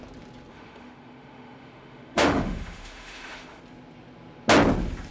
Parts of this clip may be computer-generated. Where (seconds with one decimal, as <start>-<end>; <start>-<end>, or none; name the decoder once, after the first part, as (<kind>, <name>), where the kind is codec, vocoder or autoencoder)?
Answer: 0.5-3.6 (autoencoder, DAC-VAE)